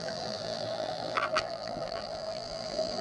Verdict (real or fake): fake